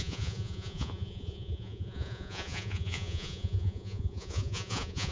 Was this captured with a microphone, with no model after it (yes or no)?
no